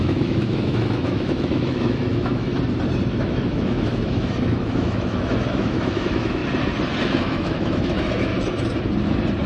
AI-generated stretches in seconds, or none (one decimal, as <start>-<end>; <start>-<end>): 0.0-2.5; 3.1-6.4; 7.0-8.3